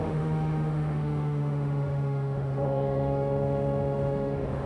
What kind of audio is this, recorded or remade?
remade